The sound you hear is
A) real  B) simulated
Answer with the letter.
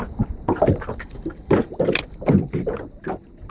A